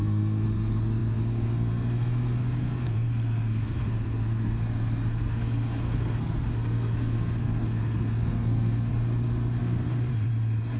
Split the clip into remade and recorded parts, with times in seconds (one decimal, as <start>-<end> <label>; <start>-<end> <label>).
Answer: 0.0-8.9 remade; 8.9-9.6 recorded; 9.6-10.1 remade; 10.1-10.8 recorded